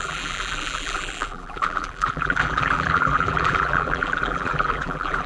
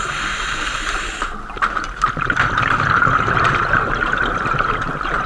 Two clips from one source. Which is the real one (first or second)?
second